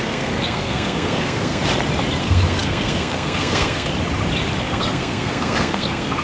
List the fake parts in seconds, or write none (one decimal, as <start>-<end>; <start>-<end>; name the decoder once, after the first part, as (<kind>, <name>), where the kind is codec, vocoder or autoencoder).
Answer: 0.0-1.6 (codec, SNAC); 2.2-3.9; 4.6-6.2